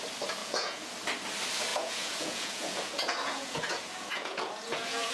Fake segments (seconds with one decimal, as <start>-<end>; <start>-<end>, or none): 0.4-0.9; 1.7-5.1